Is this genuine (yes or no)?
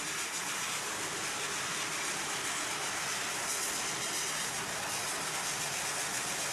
yes